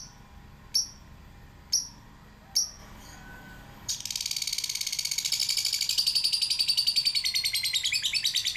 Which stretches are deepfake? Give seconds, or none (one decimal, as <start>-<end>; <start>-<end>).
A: 2.8-3.9